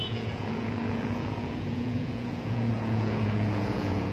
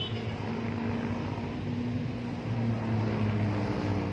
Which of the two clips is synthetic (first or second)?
first